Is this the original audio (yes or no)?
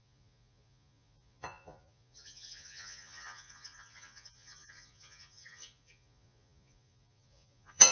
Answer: no